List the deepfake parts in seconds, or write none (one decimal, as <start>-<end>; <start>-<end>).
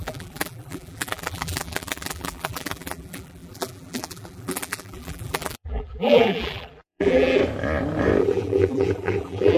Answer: 0.0-7.4; 8.2-9.6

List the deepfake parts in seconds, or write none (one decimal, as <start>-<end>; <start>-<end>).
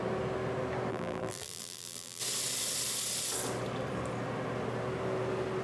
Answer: 0.9-2.2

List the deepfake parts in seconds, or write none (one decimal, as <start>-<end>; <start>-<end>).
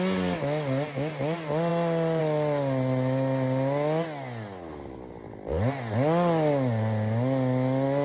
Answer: none